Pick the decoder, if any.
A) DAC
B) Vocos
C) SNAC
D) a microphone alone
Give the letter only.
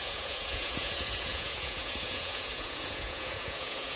B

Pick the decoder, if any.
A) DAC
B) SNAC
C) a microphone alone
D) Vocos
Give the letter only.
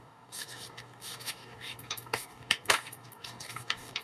A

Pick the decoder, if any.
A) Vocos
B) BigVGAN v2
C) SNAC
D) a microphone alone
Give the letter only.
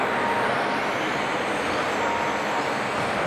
D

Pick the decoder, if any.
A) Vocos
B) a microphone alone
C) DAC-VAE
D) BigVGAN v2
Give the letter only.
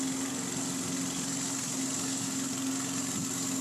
B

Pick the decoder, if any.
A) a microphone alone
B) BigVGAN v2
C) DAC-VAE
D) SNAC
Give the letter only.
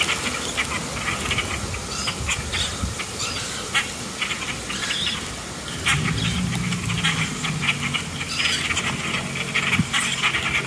A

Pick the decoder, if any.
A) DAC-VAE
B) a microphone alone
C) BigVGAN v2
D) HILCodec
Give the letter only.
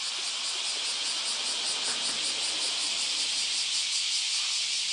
B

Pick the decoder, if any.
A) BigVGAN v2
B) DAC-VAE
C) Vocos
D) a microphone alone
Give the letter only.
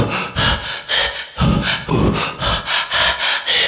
D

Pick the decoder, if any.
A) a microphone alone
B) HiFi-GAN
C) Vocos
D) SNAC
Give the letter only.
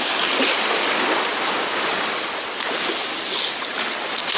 A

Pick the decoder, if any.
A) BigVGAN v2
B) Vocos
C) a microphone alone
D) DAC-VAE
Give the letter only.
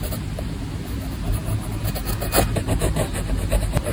C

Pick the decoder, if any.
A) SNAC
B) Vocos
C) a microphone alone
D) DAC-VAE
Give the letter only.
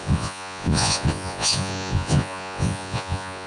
B